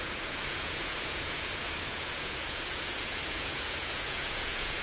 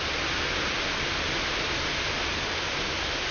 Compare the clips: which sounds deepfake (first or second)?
first